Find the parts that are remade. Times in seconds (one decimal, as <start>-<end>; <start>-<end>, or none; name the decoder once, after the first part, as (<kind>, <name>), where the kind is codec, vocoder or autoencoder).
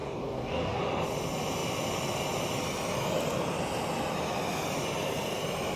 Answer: 0.0-0.8 (codec, DAC)